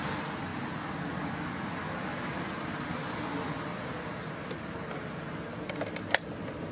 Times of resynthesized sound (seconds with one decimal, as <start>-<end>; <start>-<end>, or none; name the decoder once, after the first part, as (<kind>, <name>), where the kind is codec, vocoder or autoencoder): none